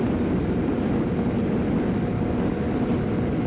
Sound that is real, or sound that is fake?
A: real